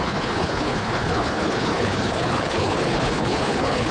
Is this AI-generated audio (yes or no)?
yes